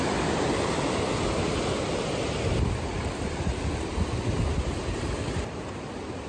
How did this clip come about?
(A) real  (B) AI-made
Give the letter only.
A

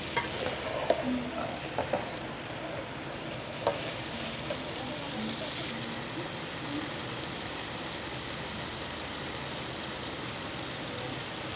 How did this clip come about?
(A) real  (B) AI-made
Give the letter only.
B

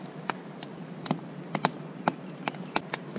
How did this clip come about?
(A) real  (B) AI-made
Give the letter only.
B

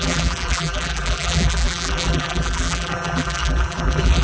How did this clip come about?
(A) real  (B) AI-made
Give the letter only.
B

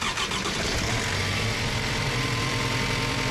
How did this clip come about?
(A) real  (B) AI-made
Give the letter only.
B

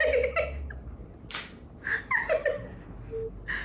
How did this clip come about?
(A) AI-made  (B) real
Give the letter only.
B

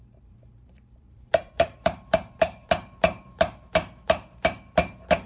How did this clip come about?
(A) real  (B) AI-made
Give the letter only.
B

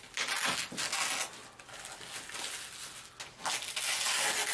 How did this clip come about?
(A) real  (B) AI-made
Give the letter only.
A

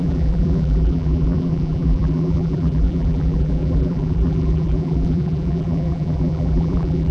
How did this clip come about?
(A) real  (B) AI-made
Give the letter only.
B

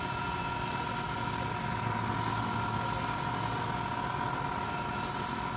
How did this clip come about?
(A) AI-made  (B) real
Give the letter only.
B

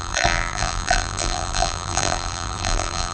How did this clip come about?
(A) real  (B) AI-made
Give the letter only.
B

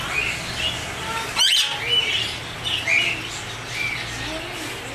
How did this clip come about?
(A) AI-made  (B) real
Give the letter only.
B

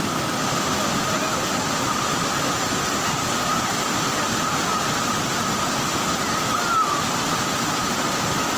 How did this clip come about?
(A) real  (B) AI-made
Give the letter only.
A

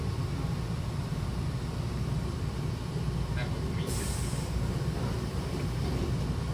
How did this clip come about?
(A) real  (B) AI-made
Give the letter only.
B